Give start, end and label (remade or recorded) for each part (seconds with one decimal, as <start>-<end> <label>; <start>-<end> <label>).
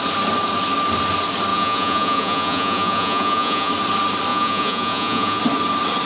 0.0-1.5 recorded; 1.5-3.7 remade; 3.7-4.3 recorded; 4.3-5.4 remade; 5.4-6.1 recorded